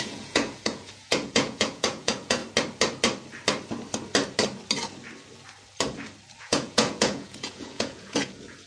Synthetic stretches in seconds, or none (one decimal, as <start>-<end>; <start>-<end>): 0.0-2.4; 6.4-8.7